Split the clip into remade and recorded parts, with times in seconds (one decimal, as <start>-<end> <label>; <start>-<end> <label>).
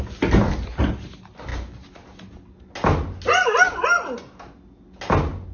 0.0-5.5 recorded